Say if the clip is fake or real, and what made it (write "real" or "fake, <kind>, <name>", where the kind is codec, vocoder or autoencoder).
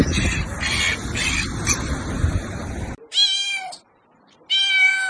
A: real